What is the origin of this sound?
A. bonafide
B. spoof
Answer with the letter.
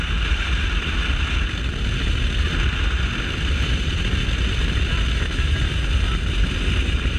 A